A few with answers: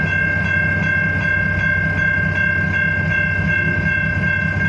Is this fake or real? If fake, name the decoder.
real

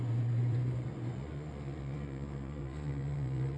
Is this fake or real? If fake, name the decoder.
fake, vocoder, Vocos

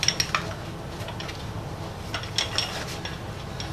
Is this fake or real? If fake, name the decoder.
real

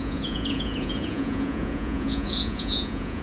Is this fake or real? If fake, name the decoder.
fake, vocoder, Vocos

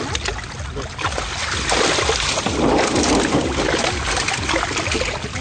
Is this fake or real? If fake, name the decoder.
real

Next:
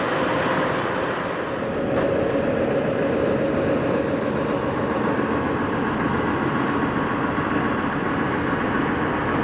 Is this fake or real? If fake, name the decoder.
real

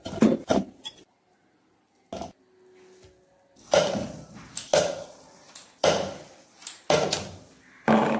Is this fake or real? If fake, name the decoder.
real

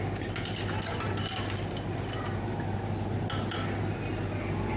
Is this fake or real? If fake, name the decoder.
real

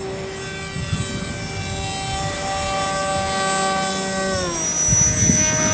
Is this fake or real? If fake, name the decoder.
real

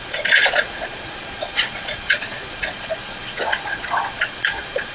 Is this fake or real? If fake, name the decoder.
fake, vocoder, Vocos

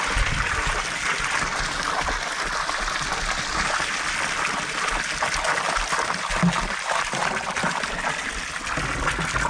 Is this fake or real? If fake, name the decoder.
real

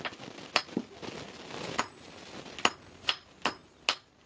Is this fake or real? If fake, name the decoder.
real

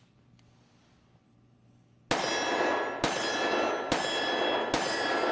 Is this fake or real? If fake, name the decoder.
real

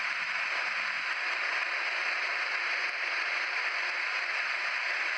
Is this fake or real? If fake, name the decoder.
real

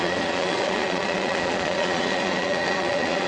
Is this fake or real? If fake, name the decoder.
fake, vocoder, Vocos